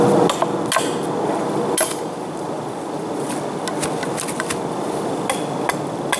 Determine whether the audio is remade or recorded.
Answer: recorded